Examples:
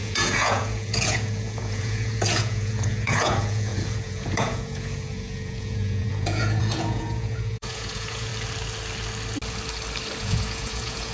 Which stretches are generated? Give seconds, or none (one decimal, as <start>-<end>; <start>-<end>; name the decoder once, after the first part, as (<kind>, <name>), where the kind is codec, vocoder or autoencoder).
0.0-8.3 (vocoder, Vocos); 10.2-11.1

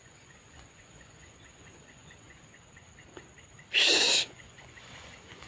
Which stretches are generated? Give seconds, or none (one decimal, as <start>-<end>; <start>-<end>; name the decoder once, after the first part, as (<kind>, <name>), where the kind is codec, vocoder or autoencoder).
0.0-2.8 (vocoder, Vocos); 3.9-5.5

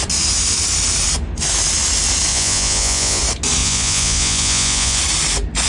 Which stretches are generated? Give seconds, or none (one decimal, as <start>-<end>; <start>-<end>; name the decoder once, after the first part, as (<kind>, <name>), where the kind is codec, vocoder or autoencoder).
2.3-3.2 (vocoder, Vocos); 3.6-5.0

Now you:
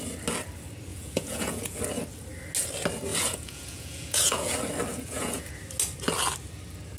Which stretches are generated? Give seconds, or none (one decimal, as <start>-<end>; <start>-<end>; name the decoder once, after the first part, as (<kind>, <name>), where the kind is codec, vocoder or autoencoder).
0.9-1.8 (vocoder, Vocos); 3.1-4.5; 4.9-5.5

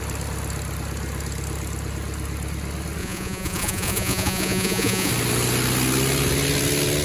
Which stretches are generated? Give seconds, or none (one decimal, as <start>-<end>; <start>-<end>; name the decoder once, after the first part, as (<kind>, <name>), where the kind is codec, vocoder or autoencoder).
3.0-5.1 (vocoder, Vocos)

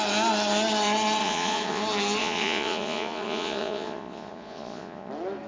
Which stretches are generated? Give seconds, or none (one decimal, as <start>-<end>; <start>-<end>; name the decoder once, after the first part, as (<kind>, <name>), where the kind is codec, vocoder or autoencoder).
1.2-1.8 (vocoder, Vocos); 2.2-5.1

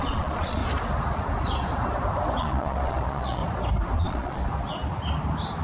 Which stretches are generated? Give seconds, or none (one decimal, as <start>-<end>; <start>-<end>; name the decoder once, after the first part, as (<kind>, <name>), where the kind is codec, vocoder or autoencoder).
0.0-0.6 (vocoder, Vocos); 2.4-3.4; 4.0-4.4